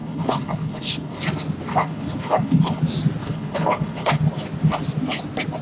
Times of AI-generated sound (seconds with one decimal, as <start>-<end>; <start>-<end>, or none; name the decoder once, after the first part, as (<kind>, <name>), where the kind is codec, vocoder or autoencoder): 0.0-1.2 (codec, HILCodec); 1.7-2.8; 3.2-4.2